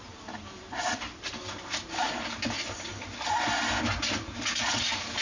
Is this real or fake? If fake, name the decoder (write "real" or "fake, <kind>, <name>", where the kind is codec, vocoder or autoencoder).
real